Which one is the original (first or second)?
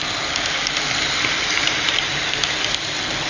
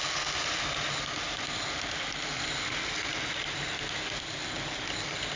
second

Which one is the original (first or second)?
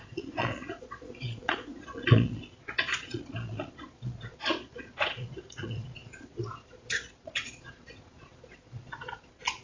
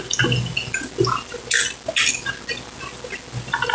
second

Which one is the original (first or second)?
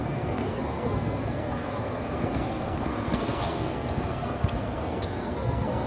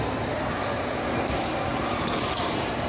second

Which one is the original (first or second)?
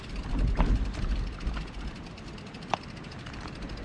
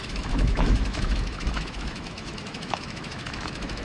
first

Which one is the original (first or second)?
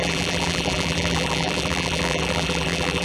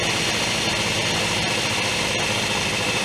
second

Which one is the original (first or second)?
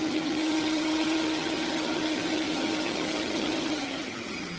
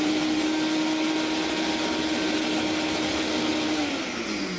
second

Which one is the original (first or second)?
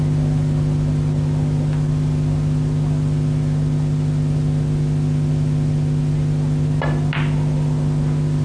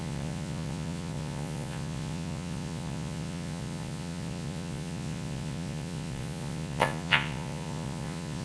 first